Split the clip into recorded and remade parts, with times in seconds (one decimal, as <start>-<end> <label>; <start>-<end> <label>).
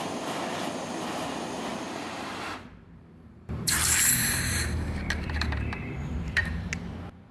0.0-6.7 remade; 6.7-7.3 recorded